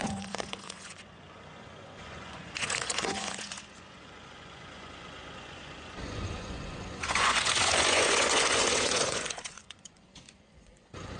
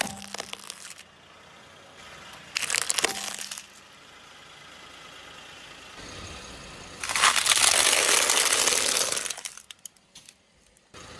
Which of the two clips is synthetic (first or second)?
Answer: first